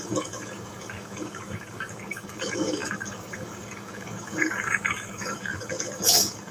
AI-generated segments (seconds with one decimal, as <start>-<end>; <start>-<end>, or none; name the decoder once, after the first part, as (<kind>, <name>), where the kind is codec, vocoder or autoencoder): 0.0-6.5 (codec, DAC)